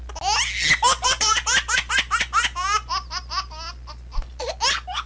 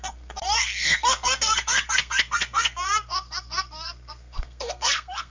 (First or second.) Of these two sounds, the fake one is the second